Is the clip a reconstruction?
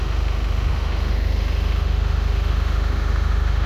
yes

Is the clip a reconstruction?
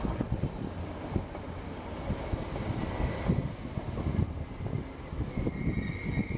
no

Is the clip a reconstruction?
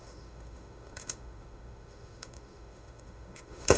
yes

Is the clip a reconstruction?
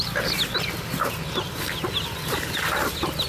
no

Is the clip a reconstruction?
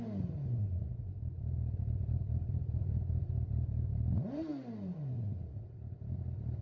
no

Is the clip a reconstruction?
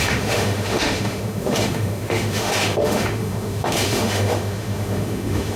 yes